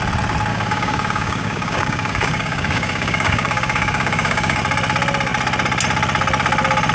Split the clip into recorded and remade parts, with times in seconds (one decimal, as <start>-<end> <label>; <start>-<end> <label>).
0.0-0.5 recorded; 0.5-4.6 remade; 4.6-6.9 recorded